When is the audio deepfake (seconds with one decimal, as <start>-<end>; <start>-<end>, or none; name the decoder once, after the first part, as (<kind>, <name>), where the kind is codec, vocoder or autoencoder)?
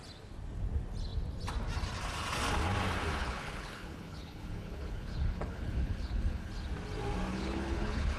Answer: 3.2-6.5 (codec, HILCodec); 7.3-8.2